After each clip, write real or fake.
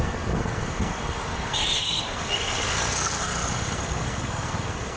fake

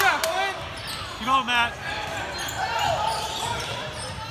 real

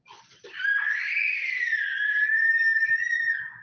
fake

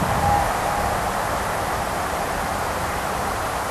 fake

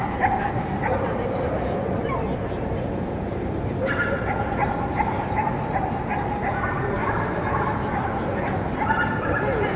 real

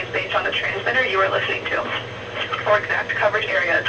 real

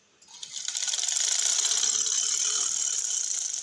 real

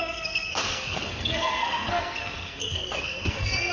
fake